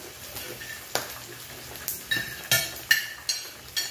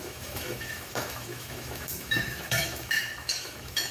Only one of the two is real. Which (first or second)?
first